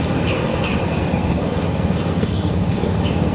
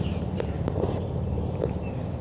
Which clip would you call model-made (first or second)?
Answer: first